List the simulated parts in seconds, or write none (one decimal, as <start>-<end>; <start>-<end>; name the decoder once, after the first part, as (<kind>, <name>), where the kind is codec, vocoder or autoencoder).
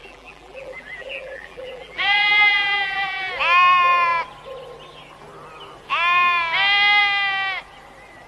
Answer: 0.0-3.3 (vocoder, BigVGAN v2)